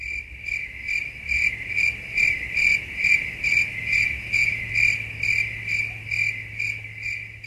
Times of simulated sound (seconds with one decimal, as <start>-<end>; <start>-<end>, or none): 3.7-4.6